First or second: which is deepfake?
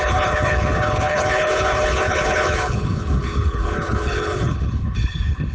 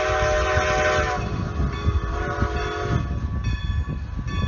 first